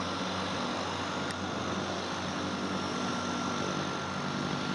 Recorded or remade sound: recorded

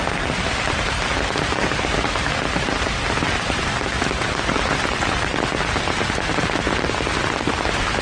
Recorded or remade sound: recorded